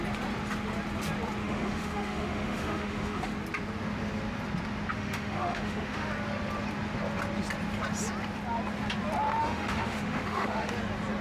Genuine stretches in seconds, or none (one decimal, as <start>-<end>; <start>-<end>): 0.0-1.4; 3.3-4.9; 6.1-9.4; 10.7-11.2